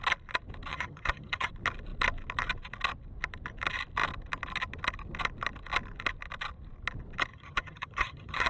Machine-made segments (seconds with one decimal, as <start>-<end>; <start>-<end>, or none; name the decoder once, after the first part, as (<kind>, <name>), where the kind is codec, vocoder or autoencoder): 0.7-1.5 (vocoder, HiFi-GAN); 7.3-8.5